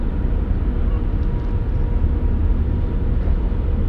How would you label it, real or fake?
real